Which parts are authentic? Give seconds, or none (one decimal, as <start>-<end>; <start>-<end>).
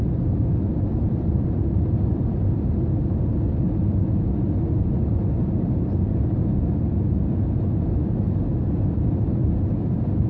0.0-0.9; 2.7-9.4